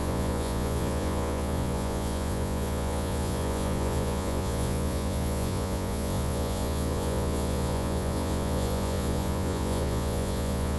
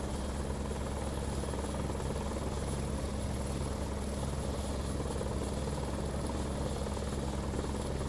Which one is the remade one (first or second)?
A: first